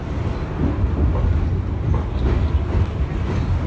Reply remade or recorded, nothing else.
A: recorded